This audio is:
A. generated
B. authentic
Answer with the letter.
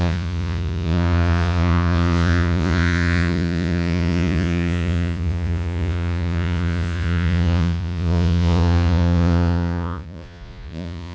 A